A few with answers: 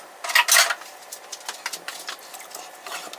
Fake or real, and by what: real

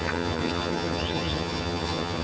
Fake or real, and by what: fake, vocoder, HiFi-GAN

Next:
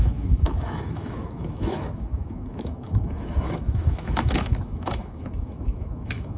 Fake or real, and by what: fake, autoencoder, DAC-VAE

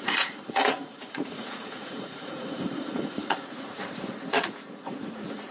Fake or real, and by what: fake, vocoder, Vocos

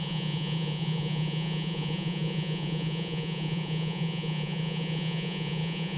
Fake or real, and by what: fake, vocoder, Vocos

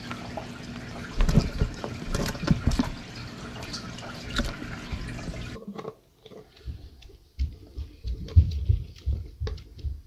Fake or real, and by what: real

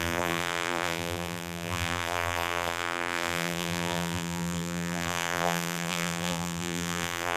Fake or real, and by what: fake, vocoder, BigVGAN v2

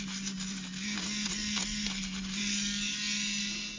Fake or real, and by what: real